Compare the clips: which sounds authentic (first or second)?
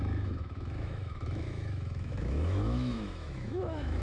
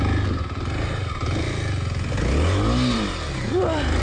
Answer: second